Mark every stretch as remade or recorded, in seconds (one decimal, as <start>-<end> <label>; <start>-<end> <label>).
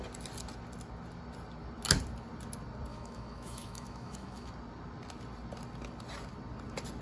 0.0-2.9 recorded; 2.9-4.5 remade; 4.5-7.0 recorded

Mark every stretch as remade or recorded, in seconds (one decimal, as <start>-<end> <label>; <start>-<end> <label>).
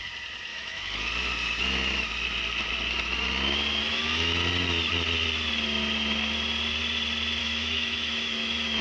0.0-0.5 recorded; 0.5-1.1 remade; 1.1-3.9 recorded; 3.9-4.5 remade; 4.5-7.4 recorded; 7.4-8.8 remade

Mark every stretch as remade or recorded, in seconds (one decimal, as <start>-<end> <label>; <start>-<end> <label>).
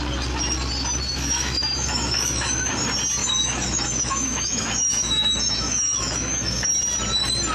0.0-1.1 recorded; 1.1-2.7 remade; 2.7-3.2 recorded; 3.2-6.7 remade; 6.7-7.5 recorded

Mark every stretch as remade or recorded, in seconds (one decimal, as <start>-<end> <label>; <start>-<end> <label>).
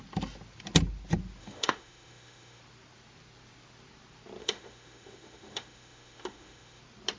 0.0-1.4 recorded; 1.4-2.6 remade; 2.6-4.4 recorded; 4.4-6.8 remade; 6.8-7.2 recorded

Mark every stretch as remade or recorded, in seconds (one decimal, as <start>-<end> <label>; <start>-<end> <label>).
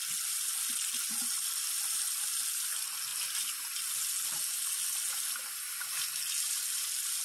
0.0-7.2 recorded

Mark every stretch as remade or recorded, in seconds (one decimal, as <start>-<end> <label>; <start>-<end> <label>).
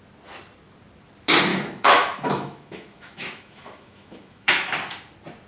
0.0-1.5 recorded; 1.5-4.8 remade; 4.8-5.5 recorded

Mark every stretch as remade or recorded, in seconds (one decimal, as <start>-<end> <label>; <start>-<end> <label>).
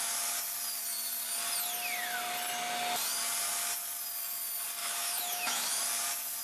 0.0-4.8 recorded; 4.8-5.8 remade; 5.8-6.4 recorded